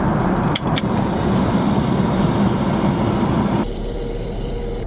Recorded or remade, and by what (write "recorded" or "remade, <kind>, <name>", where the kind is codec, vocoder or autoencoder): remade, vocoder, BigVGAN v2